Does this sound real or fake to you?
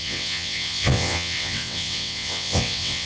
fake